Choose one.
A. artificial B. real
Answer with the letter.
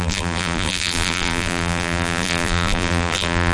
A